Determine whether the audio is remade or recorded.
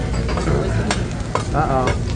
recorded